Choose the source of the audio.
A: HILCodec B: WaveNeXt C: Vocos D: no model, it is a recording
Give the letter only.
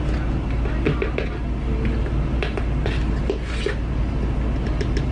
D